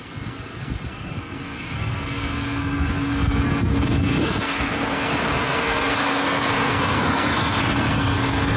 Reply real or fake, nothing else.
fake